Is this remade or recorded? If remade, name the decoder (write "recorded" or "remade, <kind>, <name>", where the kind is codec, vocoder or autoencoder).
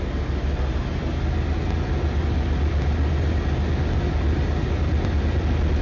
recorded